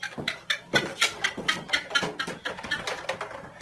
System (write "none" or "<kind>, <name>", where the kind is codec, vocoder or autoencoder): none